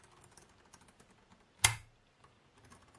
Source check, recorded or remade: recorded